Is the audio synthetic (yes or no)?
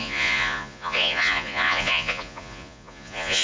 yes